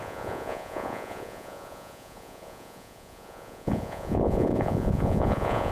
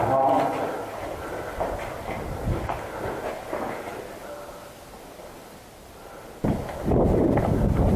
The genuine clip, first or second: second